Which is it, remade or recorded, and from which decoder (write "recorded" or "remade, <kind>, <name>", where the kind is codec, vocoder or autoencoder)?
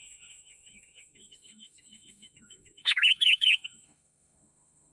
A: remade, autoencoder, DAC-VAE